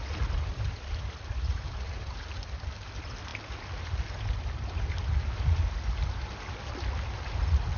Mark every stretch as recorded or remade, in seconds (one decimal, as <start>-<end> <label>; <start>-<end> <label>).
0.0-7.8 recorded